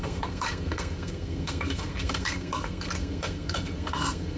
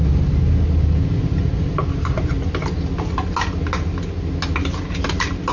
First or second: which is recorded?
second